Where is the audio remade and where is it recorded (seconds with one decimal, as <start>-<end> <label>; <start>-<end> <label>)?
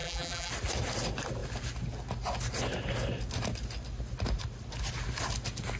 0.0-0.5 remade; 0.5-5.8 recorded